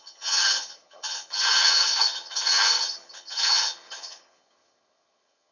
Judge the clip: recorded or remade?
remade